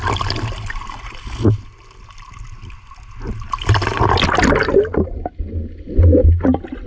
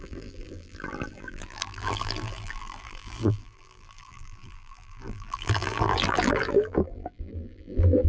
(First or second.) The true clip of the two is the first